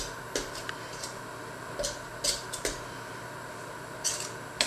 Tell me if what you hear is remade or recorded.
recorded